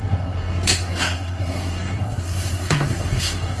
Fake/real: fake